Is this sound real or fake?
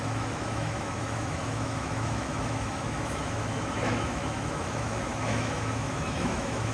fake